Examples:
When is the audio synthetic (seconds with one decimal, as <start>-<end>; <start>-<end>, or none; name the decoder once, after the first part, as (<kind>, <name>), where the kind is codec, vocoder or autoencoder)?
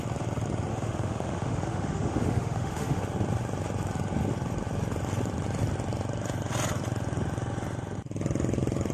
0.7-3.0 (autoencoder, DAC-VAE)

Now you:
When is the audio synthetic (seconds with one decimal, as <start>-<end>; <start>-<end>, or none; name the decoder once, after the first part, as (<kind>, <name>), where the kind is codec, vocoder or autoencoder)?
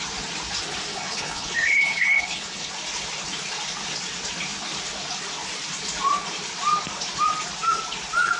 0.9-2.7 (codec, HILCodec)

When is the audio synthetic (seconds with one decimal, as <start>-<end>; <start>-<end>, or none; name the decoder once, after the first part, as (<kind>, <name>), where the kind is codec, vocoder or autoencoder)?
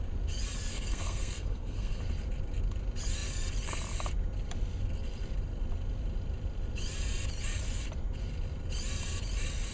0.7-2.0 (codec, SNAC)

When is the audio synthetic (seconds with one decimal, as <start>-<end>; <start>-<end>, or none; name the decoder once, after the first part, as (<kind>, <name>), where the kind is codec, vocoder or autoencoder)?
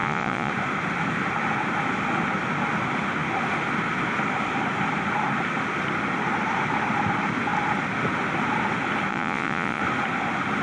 0.0-0.5 (vocoder, Vocos); 9.1-9.8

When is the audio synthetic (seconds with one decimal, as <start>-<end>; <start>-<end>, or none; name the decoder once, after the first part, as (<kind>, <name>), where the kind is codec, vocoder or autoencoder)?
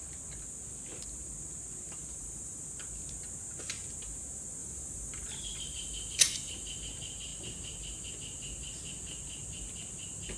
2.0-2.6 (vocoder, BigVGAN v2); 4.6-6.8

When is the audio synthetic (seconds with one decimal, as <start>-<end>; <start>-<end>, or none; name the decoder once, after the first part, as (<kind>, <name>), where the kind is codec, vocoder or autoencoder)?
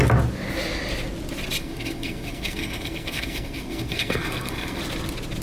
1.6-4.8 (codec, SNAC)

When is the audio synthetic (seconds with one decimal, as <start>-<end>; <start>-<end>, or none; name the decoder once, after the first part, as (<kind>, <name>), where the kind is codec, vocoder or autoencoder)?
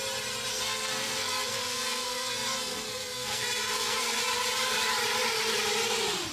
0.5-4.2 (codec, SNAC)